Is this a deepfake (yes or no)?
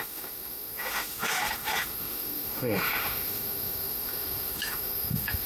yes